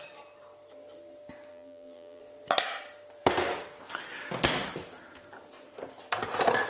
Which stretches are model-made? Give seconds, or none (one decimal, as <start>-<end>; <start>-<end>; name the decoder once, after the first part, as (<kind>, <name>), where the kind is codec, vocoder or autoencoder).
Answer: 1.5-2.2 (vocoder, BigVGAN v2)